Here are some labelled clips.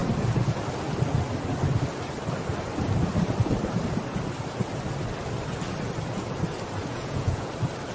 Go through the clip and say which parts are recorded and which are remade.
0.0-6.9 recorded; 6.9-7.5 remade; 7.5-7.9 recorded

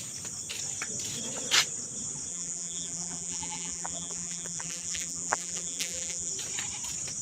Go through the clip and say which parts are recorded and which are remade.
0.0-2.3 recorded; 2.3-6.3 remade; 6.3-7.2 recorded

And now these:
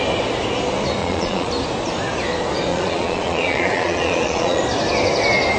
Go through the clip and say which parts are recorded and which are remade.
0.0-1.0 recorded; 1.0-1.5 remade; 1.5-2.7 recorded; 2.7-4.6 remade; 4.6-5.6 recorded

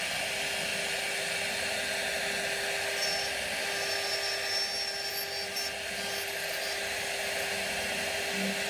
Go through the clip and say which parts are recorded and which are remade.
0.0-8.7 recorded